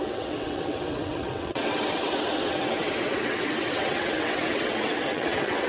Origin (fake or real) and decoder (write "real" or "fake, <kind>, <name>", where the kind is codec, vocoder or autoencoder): fake, vocoder, WaveNeXt